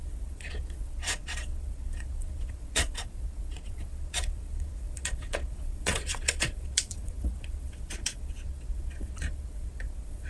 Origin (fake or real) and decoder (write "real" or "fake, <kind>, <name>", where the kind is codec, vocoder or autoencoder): fake, vocoder, Vocos